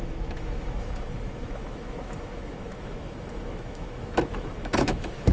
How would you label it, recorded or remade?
remade